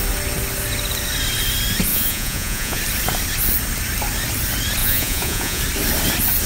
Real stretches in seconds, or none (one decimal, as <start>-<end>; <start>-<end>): 0.0-1.9; 2.8-4.8; 5.6-6.5